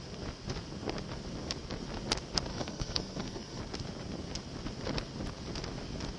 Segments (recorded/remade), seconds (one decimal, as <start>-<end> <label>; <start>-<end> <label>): 0.0-2.5 recorded; 2.5-3.6 remade; 3.6-6.2 recorded